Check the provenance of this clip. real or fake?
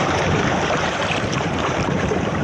fake